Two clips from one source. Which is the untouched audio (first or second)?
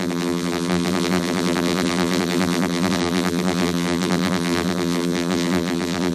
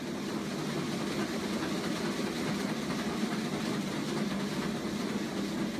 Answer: second